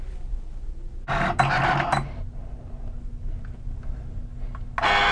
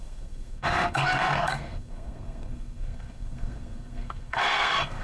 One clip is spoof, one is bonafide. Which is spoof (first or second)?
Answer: second